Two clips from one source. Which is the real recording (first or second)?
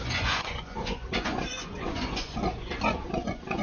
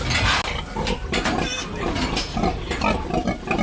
second